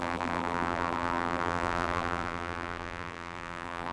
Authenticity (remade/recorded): remade